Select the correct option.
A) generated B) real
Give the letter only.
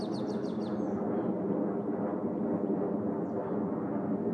B